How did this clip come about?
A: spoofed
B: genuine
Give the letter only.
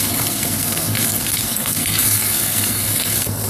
A